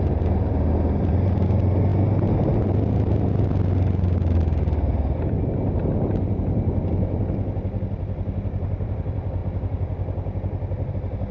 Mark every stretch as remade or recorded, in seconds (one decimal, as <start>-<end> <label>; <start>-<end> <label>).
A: 0.0-11.3 recorded